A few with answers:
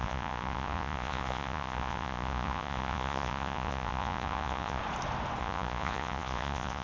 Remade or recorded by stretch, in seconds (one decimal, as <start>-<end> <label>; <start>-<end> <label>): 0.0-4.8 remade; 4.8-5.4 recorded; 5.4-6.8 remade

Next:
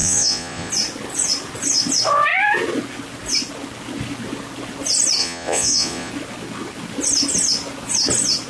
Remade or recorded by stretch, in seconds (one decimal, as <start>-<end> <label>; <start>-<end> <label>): 0.0-0.7 remade; 0.7-5.2 recorded; 5.2-6.1 remade; 6.1-8.5 recorded

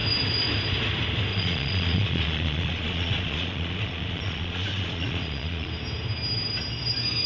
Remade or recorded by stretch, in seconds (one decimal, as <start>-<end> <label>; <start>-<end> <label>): 0.0-1.3 recorded; 1.3-5.7 remade; 5.7-7.3 recorded

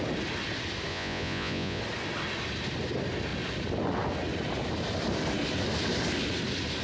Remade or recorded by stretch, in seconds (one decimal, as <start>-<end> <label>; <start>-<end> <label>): 0.0-0.9 recorded; 0.9-1.8 remade; 1.8-6.8 recorded

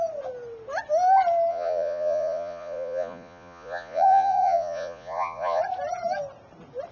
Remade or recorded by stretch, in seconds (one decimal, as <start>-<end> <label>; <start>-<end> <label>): 0.0-1.5 recorded; 1.5-5.6 remade; 5.6-6.9 recorded

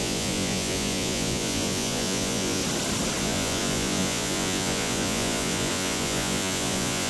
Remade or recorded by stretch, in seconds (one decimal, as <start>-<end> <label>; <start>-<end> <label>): 0.0-2.6 remade; 2.6-3.2 recorded; 3.2-7.1 remade